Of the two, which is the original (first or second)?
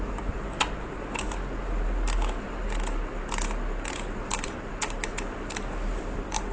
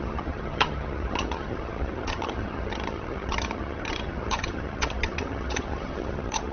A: first